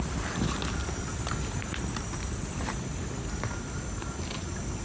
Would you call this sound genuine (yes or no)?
yes